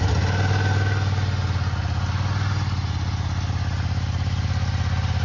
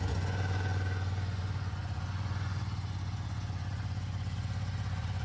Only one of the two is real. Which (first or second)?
first